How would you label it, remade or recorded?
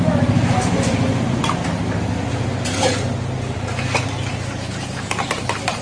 recorded